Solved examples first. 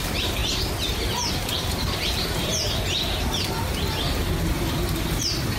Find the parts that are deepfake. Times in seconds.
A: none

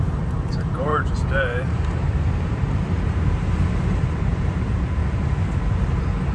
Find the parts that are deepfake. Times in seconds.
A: 0.0-6.3 (vocoder, BigVGAN v2)